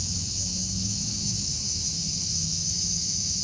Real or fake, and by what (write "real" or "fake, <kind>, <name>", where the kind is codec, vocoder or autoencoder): fake, autoencoder, DAC-VAE